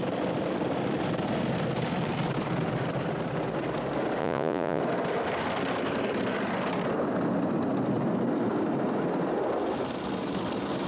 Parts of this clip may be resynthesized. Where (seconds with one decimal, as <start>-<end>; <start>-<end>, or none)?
4.2-4.8